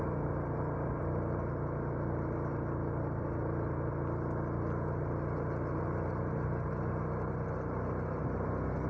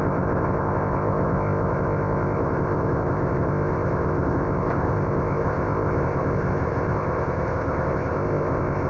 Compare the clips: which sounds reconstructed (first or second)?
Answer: second